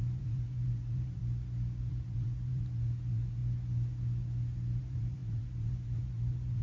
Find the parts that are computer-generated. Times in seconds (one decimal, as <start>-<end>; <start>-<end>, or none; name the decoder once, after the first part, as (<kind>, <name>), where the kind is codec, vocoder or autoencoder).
0.0-1.2 (vocoder, BigVGAN v2); 1.9-3.4; 4.8-6.6